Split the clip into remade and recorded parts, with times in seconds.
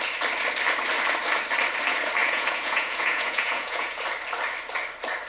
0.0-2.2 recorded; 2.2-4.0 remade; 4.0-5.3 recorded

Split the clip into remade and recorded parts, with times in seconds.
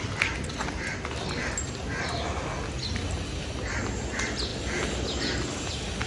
0.0-6.1 recorded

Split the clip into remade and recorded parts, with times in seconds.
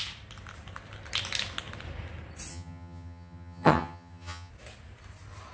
0.0-2.5 recorded; 2.5-4.5 remade; 4.5-5.5 recorded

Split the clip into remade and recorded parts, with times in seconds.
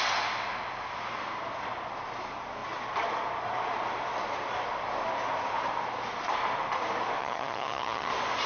0.0-7.2 recorded; 7.2-8.1 remade; 8.1-8.5 recorded